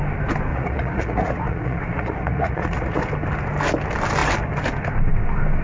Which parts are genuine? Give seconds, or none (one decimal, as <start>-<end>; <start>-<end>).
0.0-0.5; 3.0-5.6